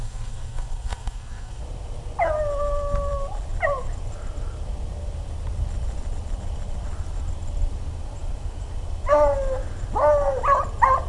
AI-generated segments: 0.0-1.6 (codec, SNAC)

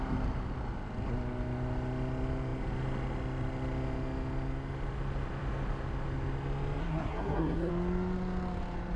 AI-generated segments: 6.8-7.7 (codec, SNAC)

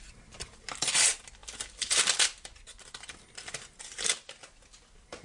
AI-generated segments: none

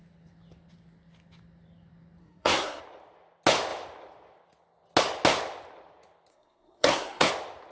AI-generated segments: 2.2-2.8 (codec, SNAC); 6.3-7.3

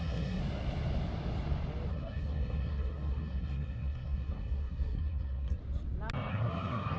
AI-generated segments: 0.0-0.4 (codec, SNAC); 1.9-5.6; 6.3-7.0

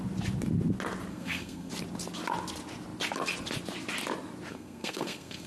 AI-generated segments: 1.1-1.7 (codec, SNAC); 4.5-5.5